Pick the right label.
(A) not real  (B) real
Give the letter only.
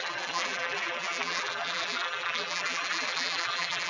A